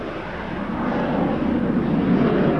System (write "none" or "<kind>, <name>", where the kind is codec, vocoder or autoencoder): none